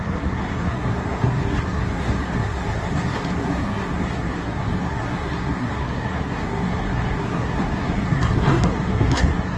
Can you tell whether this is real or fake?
fake